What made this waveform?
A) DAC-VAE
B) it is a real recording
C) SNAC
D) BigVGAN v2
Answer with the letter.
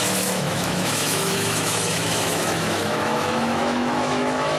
A